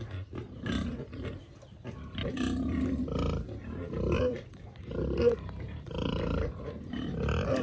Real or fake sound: fake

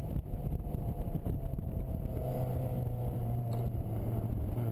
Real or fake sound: fake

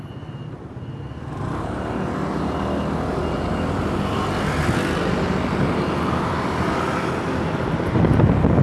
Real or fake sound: real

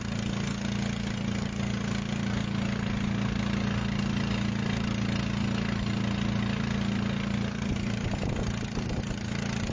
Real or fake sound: real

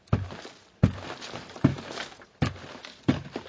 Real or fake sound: fake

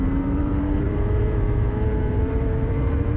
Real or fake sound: fake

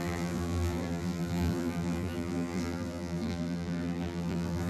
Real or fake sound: fake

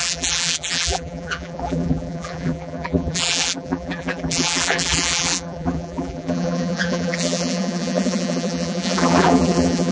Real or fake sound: fake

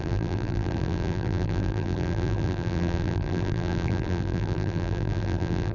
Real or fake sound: fake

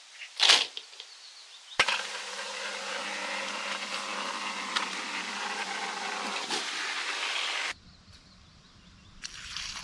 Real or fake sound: fake